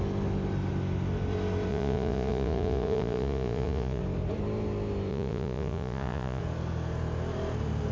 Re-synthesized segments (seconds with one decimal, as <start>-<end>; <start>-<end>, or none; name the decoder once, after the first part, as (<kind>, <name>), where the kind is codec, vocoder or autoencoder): 1.7-4.0 (vocoder, Vocos); 5.1-6.4